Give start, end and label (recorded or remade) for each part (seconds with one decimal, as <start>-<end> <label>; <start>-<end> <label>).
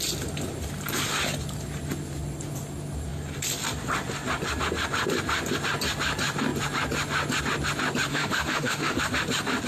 0.0-8.1 recorded; 8.1-9.0 remade; 9.0-9.7 recorded